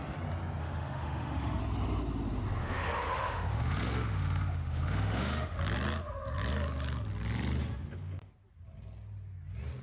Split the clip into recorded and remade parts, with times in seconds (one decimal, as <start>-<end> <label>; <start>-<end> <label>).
0.0-0.6 recorded; 0.6-1.6 remade; 1.6-2.6 recorded; 2.6-5.6 remade; 5.6-7.6 recorded; 7.6-8.3 remade; 8.3-9.8 recorded